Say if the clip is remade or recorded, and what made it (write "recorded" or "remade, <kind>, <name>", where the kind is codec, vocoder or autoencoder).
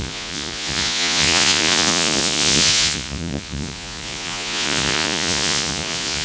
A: remade, vocoder, Vocos